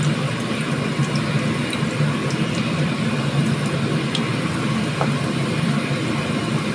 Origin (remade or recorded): recorded